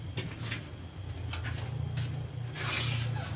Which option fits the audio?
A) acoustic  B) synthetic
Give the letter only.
A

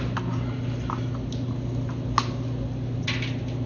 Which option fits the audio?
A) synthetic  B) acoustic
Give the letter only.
B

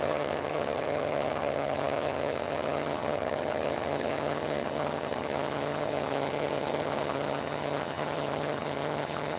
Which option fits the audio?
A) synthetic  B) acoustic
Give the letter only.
A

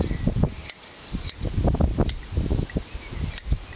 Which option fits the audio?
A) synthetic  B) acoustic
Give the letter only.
B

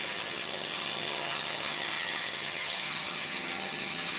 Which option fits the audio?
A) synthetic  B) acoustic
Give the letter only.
A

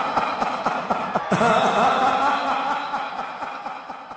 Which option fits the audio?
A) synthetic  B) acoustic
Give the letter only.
B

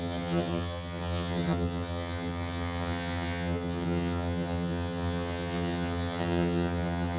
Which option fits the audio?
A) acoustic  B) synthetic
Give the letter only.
B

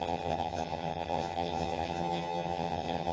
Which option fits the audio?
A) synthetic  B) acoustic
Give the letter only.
A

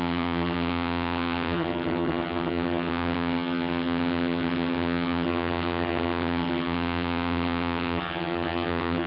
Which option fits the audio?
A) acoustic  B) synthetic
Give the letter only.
B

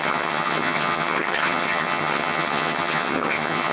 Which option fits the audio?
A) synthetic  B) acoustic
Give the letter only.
A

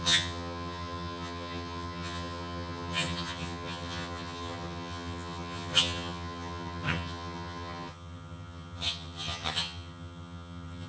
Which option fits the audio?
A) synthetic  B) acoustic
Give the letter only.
A